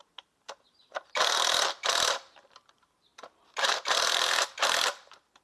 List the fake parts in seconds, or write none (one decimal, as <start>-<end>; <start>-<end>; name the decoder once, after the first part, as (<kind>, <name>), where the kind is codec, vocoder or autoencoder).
0.0-5.4 (vocoder, BigVGAN v2)